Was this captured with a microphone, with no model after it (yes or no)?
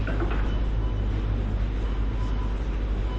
yes